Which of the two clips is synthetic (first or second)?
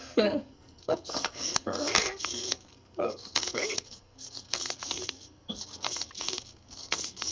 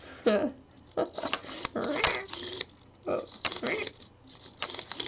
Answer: first